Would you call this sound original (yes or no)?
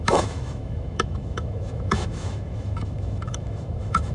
no